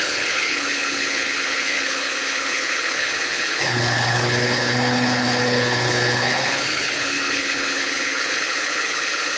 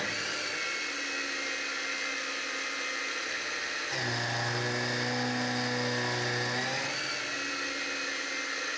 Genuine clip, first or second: second